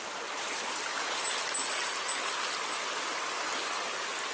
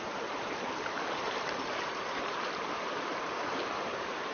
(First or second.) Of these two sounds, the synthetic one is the second